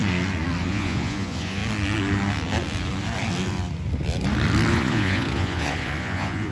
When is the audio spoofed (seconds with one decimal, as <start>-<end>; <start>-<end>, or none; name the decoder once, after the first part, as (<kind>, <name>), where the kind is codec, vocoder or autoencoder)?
0.6-1.6 (vocoder, Vocos); 4.7-6.5